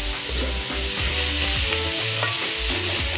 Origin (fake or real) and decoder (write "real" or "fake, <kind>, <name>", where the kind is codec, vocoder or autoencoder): real